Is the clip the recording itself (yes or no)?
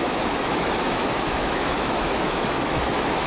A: no